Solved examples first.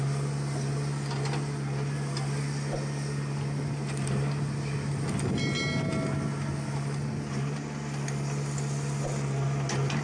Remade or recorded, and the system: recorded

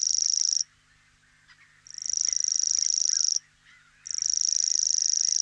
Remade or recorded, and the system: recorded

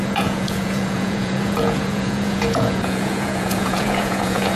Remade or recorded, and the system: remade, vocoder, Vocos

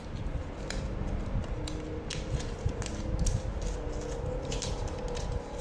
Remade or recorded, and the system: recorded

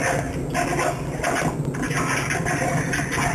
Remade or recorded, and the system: recorded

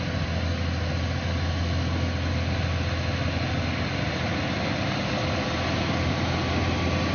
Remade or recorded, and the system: recorded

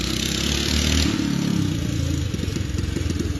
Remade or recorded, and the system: recorded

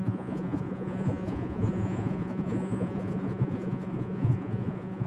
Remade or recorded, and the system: remade, vocoder, Vocos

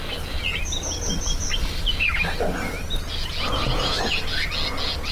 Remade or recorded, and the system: recorded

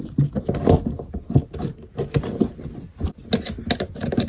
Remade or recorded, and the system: recorded